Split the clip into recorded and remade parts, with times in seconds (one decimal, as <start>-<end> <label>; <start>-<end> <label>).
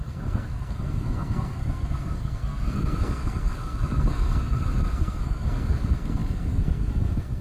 0.0-7.4 remade